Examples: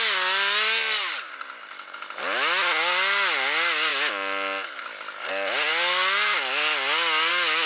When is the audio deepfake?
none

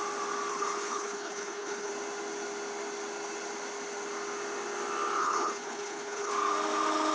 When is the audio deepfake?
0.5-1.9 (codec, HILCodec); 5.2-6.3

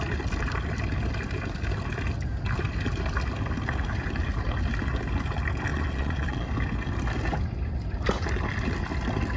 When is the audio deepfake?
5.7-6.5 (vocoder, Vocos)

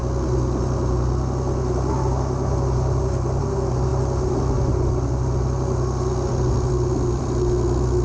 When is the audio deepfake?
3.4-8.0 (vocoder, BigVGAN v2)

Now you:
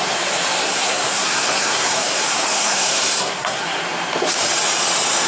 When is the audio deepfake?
0.6-3.8 (codec, SNAC)